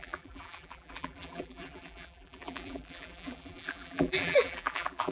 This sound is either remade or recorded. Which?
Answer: remade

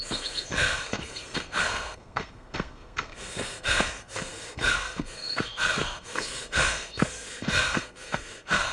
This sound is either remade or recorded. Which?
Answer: remade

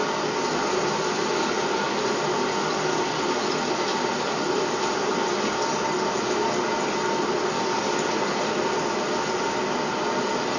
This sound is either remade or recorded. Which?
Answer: recorded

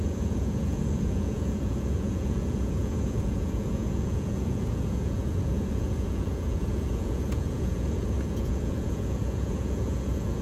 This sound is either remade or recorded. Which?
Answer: remade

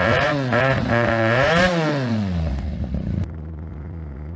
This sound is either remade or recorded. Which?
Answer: remade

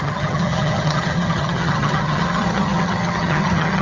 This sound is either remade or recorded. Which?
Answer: remade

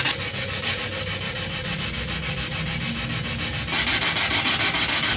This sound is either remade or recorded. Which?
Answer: recorded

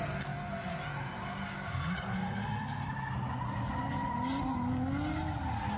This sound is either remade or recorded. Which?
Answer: recorded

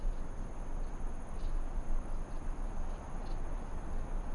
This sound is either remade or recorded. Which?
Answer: recorded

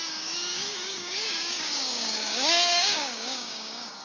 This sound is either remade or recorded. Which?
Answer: remade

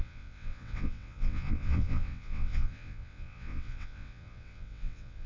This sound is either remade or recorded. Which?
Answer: remade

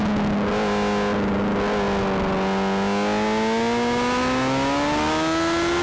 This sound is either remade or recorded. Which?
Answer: recorded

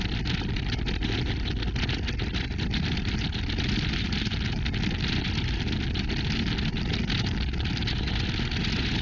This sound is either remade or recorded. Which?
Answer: recorded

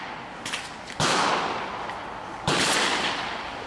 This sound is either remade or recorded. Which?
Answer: recorded